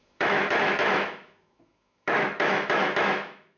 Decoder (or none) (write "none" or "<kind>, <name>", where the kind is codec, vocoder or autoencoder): autoencoder, DAC-VAE